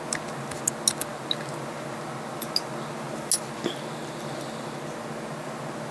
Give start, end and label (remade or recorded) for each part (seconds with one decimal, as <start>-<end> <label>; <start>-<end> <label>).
0.0-5.9 recorded